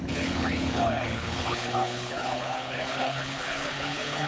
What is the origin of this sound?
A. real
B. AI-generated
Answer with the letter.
B